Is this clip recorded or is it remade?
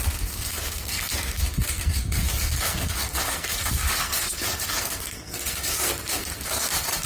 remade